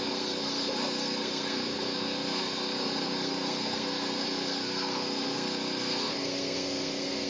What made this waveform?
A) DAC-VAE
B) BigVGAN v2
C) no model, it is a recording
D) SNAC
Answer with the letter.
D